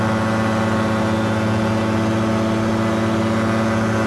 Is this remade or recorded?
recorded